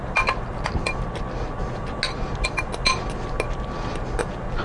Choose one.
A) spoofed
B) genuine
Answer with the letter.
B